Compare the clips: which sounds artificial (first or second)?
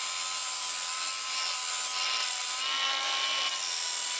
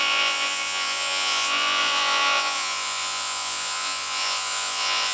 second